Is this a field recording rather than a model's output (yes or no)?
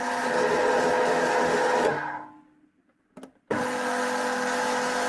yes